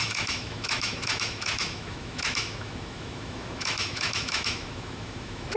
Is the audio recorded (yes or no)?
no